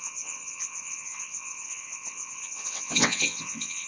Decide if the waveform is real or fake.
fake